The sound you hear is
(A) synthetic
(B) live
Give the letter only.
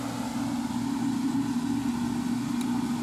B